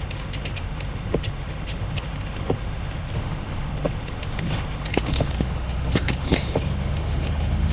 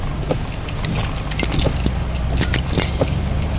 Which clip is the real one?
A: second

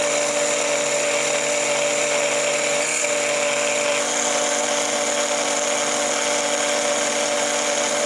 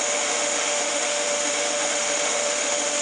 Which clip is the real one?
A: first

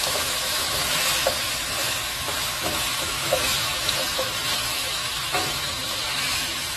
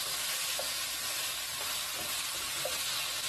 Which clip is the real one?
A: second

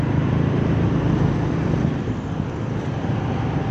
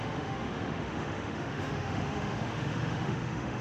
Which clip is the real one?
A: first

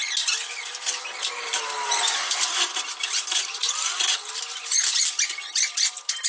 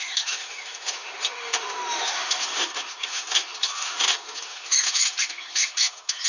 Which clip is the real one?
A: first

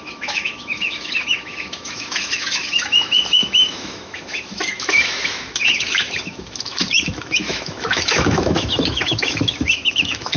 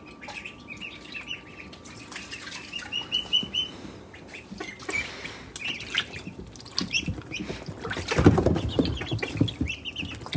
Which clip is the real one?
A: second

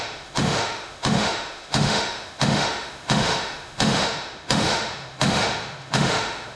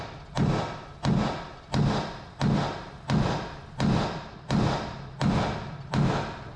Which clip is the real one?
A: second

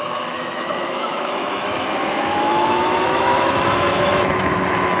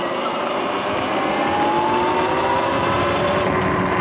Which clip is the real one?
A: second